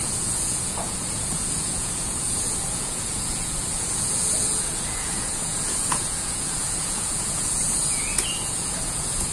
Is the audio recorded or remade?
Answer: remade